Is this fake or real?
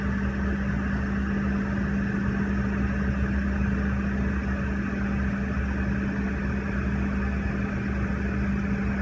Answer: real